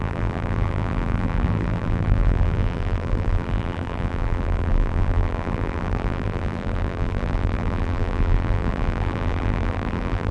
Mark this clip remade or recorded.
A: remade